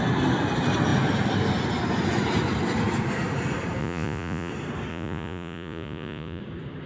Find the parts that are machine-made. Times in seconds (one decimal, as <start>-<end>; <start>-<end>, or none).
3.8-4.5; 4.9-6.4